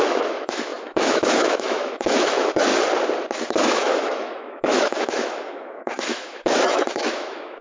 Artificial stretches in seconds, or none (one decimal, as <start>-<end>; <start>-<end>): 0.0-2.7; 3.5-7.6